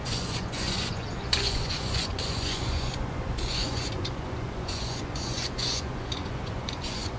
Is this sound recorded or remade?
remade